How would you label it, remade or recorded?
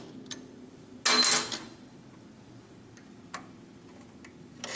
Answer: recorded